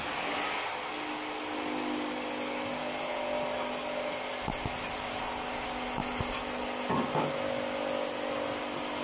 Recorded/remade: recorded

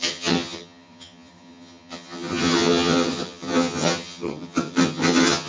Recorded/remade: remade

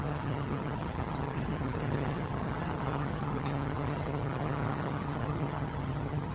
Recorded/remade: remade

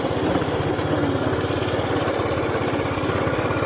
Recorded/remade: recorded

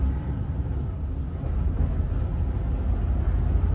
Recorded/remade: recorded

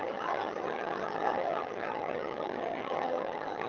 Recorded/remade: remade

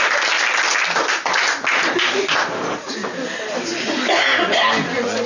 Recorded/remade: recorded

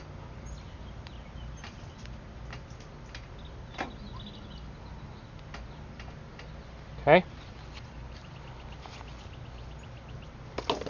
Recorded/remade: recorded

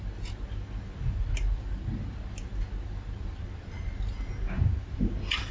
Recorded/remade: recorded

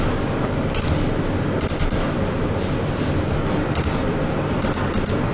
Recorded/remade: recorded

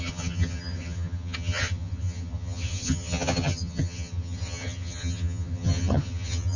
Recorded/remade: remade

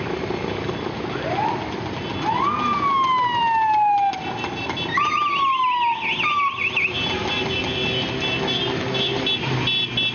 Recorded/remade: recorded